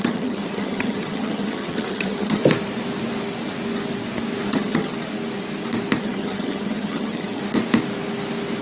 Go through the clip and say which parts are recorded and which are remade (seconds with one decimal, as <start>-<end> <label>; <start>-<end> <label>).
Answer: 0.0-2.4 remade; 2.4-4.5 recorded; 4.5-4.9 remade; 4.9-6.0 recorded; 6.0-7.4 remade; 7.4-8.6 recorded